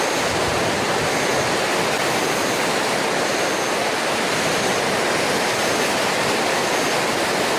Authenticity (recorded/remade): recorded